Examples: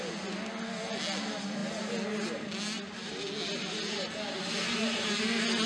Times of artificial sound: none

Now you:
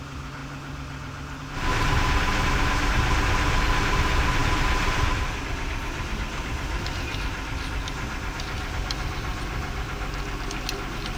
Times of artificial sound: 4.4-5.6 (vocoder, BigVGAN v2)

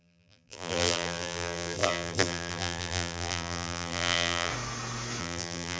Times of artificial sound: 0.0-4.5 (vocoder, BigVGAN v2); 5.2-5.8

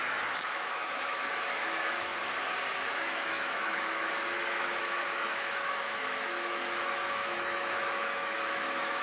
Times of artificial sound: 0.0-2.1 (autoencoder, DAC-VAE); 2.7-9.0

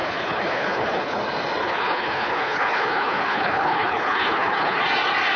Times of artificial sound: 0.0-1.2 (codec, HILCodec); 1.6-4.8